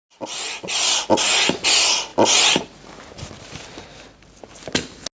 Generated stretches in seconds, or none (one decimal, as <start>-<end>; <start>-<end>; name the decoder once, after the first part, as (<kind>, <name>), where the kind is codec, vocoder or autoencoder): none